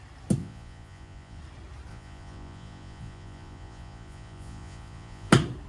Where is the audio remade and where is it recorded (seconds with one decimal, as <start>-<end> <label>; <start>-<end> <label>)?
0.0-0.4 recorded; 0.4-1.4 remade; 1.4-1.9 recorded; 1.9-5.3 remade; 5.3-5.7 recorded